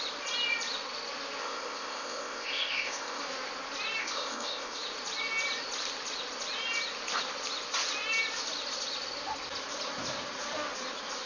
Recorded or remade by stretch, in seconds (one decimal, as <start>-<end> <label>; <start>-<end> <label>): 0.0-1.4 recorded; 1.4-3.2 remade; 3.2-4.0 recorded; 4.0-4.8 remade; 4.8-11.3 recorded